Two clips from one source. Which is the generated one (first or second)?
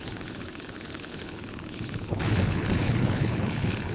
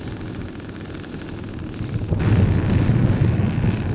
first